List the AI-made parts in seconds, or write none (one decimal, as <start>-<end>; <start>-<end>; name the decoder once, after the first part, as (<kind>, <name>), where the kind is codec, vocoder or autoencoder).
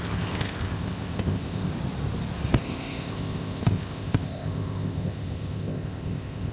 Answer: 0.0-1.7 (codec, ZipCodec); 2.6-6.5